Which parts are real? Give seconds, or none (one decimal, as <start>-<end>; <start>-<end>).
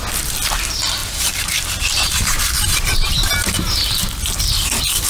0.0-1.0; 4.1-5.1